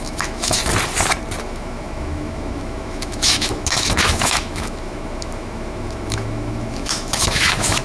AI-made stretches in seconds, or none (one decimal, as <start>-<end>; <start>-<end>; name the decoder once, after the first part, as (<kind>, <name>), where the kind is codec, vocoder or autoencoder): 0.0-0.6 (autoencoder, DAC-VAE); 1.4-7.8